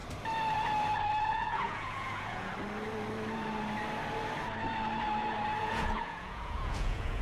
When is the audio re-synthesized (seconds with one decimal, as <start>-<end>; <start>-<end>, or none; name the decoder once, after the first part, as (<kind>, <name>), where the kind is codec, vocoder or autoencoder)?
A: 1.3-2.5 (vocoder, Vocos); 5.6-7.2